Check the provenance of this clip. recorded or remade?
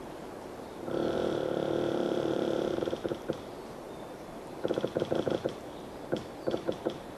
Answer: remade